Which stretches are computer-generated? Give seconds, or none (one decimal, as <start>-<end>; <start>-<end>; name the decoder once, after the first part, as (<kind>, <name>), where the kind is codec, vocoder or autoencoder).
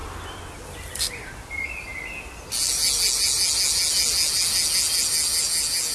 none